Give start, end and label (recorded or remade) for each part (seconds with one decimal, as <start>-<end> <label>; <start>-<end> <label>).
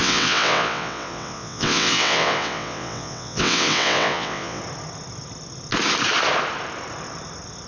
0.0-4.6 remade; 4.6-7.7 recorded